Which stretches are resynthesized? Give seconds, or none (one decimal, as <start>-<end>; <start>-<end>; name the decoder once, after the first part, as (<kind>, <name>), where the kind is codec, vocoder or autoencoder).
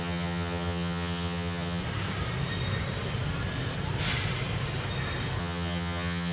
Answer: 0.0-1.8 (vocoder, HiFi-GAN); 5.4-6.3